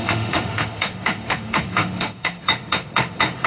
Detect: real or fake fake